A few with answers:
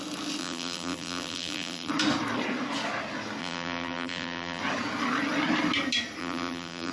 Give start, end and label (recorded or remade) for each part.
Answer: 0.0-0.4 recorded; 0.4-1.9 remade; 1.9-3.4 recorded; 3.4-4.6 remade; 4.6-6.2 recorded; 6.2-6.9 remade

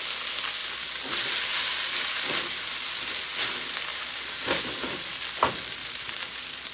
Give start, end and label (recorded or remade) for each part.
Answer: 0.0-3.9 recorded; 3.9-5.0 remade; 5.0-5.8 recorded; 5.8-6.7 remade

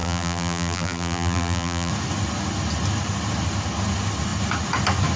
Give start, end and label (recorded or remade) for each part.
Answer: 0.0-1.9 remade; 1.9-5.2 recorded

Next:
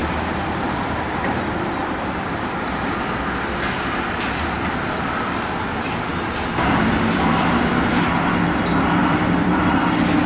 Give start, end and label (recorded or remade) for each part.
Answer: 0.0-3.1 remade; 3.1-6.1 recorded; 6.1-8.0 remade; 8.0-9.0 recorded; 9.0-10.3 remade

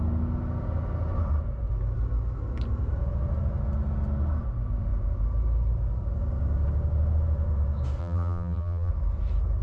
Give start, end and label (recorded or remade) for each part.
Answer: 0.0-8.0 recorded; 8.0-8.9 remade; 8.9-9.6 recorded